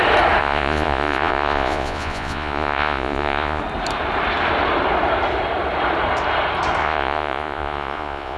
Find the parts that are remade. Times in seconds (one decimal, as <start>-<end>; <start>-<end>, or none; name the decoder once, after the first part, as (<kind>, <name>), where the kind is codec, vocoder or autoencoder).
0.4-3.6 (vocoder, Vocos); 6.8-8.4